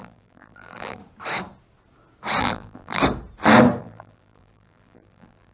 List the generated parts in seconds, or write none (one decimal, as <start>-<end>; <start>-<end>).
0.0-1.0; 2.4-3.0; 3.8-5.5